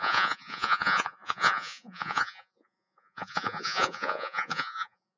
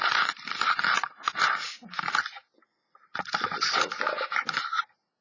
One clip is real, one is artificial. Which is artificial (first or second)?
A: first